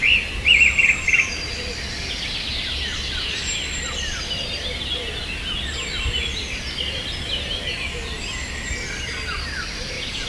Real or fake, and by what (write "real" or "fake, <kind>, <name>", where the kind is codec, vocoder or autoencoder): real